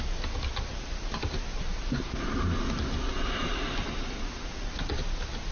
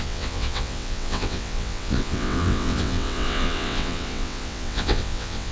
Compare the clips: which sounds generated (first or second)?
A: second